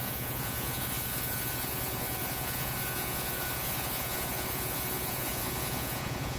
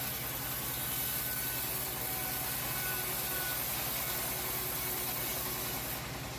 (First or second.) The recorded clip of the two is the second